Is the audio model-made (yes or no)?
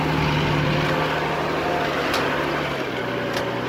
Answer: no